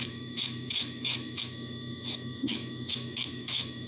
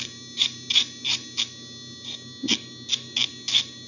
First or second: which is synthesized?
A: first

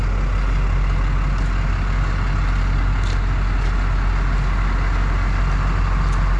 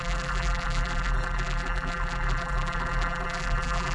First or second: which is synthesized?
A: second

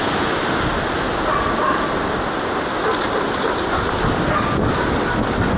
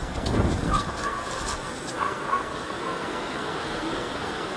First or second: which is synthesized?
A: second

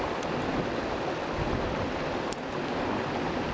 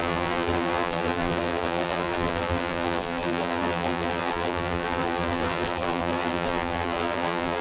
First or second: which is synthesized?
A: second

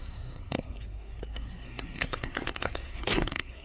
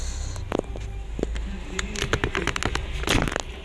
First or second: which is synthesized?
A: first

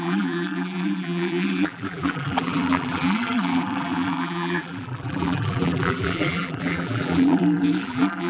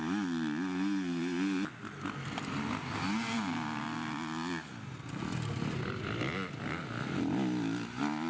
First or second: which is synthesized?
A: first